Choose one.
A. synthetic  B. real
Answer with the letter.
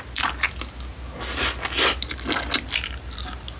B